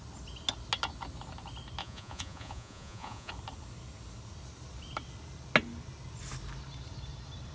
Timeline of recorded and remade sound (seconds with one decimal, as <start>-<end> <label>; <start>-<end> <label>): 0.0-1.8 recorded; 1.8-3.3 remade; 3.3-7.5 recorded